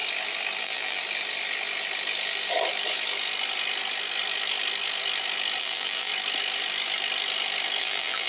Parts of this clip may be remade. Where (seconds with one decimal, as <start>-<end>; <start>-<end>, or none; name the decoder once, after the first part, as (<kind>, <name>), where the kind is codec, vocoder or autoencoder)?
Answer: 0.6-1.0 (vocoder, BigVGAN v2); 5.6-6.1; 7.8-8.3